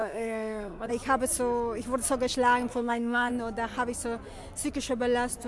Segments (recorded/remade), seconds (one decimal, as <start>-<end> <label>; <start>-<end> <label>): 0.0-0.9 remade; 0.9-2.7 recorded; 2.7-3.3 remade; 3.3-5.5 recorded